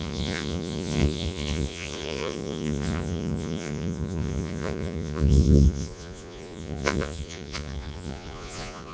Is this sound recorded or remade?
remade